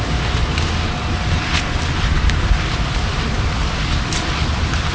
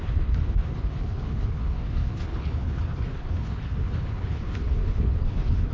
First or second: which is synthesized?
second